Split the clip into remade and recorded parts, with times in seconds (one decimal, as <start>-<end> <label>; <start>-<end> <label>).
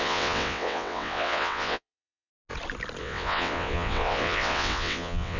0.0-2.3 remade; 2.3-3.0 recorded; 3.0-5.4 remade